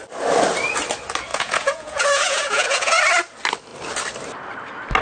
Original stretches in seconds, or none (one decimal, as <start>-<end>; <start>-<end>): 0.0-1.3; 3.0-5.0